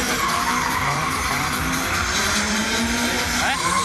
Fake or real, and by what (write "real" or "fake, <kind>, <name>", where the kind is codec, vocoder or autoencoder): fake, vocoder, BigVGAN v2